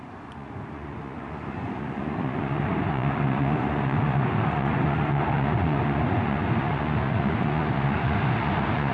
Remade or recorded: remade